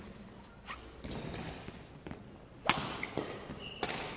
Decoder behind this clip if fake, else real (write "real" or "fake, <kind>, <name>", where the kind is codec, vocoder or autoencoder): real